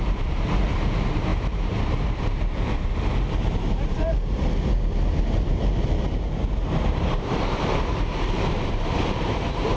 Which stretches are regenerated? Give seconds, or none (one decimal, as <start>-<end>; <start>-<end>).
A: 0.0-9.8